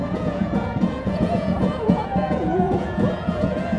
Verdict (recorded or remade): remade